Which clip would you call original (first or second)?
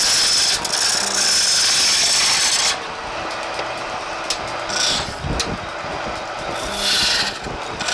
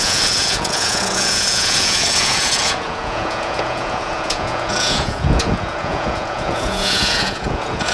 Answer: first